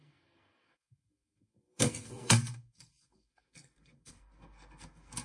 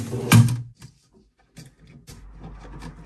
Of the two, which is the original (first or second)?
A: second